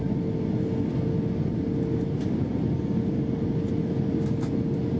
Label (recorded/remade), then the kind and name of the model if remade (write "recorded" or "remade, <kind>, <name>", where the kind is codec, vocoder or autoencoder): recorded